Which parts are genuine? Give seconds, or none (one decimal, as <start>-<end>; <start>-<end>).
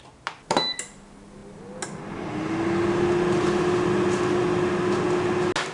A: 0.0-5.7